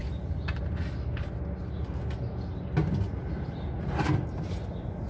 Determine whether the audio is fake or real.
real